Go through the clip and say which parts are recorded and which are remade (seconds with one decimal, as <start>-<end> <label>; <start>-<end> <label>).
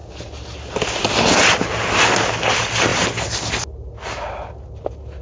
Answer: 0.0-5.2 recorded